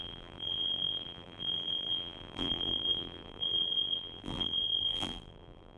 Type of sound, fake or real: fake